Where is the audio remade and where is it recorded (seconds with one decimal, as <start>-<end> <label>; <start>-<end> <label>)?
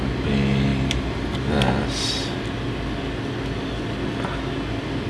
0.0-5.1 recorded